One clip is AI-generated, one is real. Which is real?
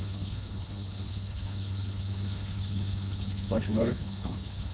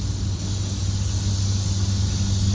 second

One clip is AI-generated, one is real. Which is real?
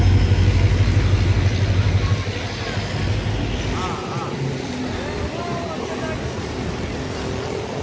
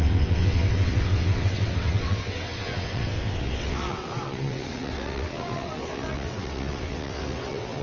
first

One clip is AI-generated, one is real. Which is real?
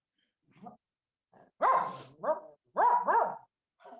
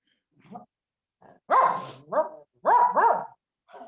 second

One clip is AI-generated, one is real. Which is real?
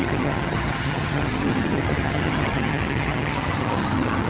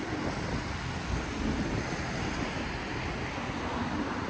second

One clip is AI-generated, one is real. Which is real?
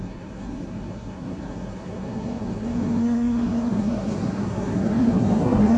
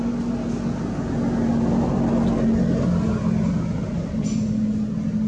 second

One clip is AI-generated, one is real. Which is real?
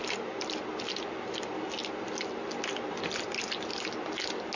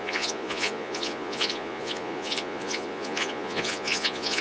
first